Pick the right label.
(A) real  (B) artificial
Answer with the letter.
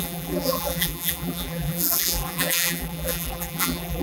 B